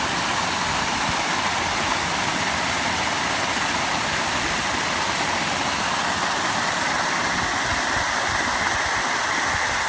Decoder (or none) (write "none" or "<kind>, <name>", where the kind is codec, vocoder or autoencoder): none